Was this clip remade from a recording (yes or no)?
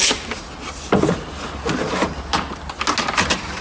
no